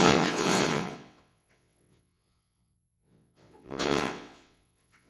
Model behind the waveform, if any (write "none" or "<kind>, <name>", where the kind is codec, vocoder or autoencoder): vocoder, WaveNeXt